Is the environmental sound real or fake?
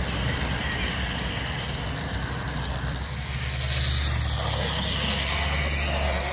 real